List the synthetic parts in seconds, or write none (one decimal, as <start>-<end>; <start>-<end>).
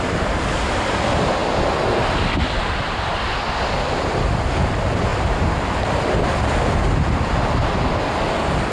5.1-6.3